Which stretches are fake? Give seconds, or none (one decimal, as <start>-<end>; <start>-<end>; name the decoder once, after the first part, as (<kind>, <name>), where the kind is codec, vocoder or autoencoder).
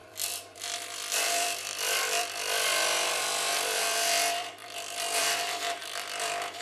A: 0.0-6.6 (vocoder, BigVGAN v2)